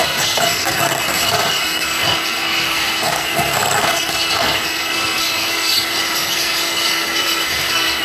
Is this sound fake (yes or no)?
yes